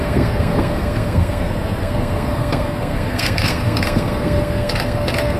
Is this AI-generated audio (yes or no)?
yes